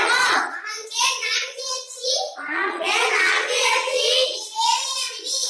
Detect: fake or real fake